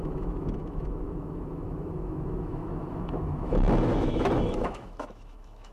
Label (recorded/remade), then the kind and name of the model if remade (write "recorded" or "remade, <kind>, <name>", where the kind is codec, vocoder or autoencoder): remade, autoencoder, DAC-VAE